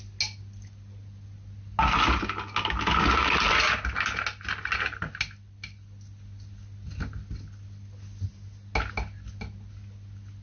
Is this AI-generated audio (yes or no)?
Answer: no